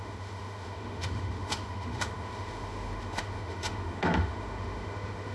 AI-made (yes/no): yes